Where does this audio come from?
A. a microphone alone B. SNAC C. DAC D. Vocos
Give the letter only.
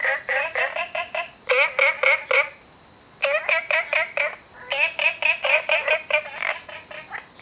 A